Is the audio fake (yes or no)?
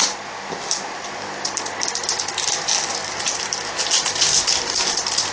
no